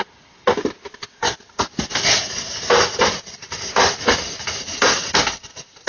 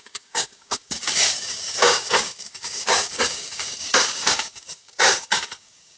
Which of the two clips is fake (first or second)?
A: second